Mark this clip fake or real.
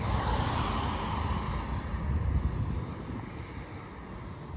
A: real